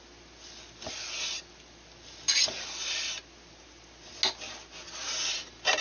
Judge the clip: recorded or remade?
recorded